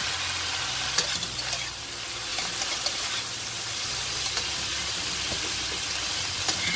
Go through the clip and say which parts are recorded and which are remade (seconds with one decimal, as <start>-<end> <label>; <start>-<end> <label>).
0.0-6.8 recorded